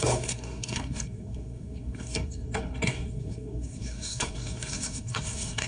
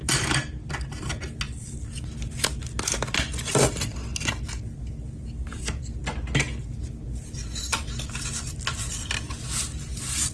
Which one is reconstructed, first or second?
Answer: first